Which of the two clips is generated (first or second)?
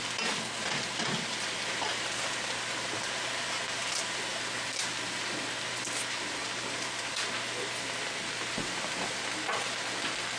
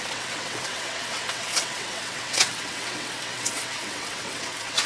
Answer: second